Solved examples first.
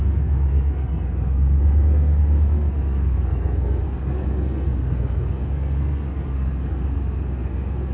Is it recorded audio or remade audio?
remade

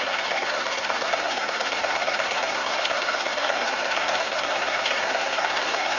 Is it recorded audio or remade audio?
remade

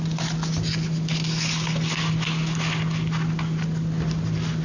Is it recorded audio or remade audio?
recorded